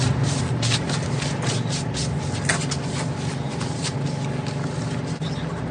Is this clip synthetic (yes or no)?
no